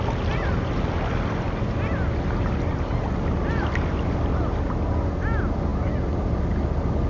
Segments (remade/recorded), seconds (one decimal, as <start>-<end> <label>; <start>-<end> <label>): 0.0-7.1 recorded